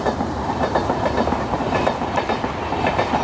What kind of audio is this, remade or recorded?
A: remade